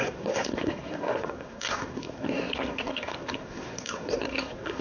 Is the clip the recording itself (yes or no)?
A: no